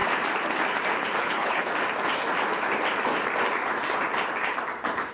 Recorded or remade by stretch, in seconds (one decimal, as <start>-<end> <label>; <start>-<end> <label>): 0.0-1.2 recorded; 1.2-1.7 remade; 1.7-5.1 recorded